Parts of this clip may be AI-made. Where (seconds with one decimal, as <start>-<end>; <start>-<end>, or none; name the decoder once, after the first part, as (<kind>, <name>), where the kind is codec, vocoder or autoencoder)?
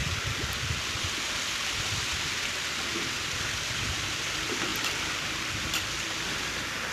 none